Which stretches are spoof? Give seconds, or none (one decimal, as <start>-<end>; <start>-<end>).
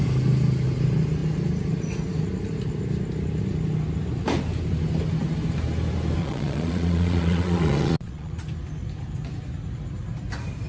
6.2-8.3